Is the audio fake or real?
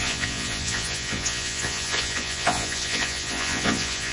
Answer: fake